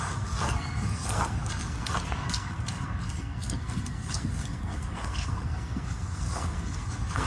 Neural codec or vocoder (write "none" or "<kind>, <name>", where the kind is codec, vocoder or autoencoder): codec, SNAC